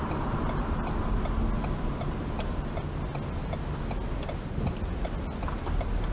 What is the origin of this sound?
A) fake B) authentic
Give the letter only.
B